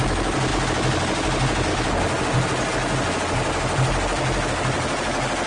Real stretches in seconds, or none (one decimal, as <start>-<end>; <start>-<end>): 0.0-5.5